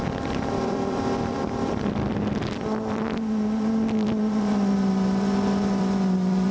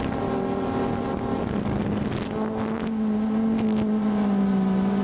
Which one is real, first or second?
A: second